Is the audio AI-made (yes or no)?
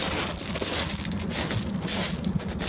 no